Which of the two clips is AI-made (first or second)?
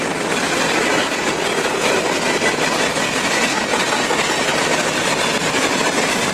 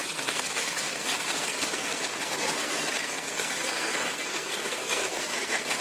second